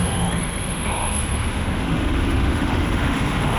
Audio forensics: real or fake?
fake